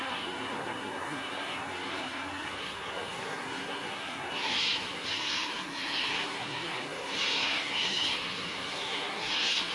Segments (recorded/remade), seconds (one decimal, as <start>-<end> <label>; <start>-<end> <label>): 0.0-9.7 remade

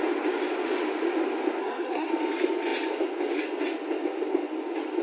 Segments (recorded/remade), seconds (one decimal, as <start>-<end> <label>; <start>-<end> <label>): 0.0-1.6 recorded; 1.6-2.1 remade; 2.1-5.0 recorded

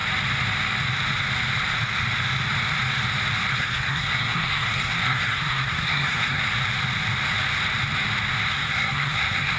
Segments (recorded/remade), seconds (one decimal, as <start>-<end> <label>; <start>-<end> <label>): 0.0-3.5 recorded; 3.5-6.4 remade; 6.4-8.5 recorded; 8.5-9.6 remade

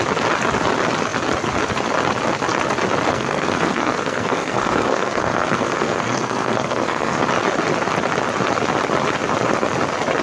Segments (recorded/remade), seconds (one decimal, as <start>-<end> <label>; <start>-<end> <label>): 0.0-3.1 recorded; 3.1-7.2 remade; 7.2-10.2 recorded

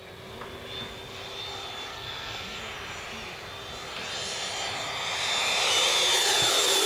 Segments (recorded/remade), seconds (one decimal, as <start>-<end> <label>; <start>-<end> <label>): 0.0-1.9 recorded; 1.9-2.6 remade; 2.6-6.9 recorded

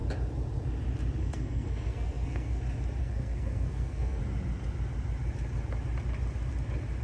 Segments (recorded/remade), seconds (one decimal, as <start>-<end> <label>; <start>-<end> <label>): 0.0-1.2 recorded; 1.2-2.6 remade; 2.6-3.0 recorded; 3.0-4.2 remade; 4.2-7.0 recorded

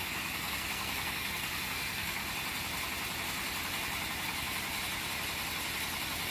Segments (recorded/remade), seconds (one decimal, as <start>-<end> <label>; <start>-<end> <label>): 0.0-2.2 remade; 2.2-6.3 recorded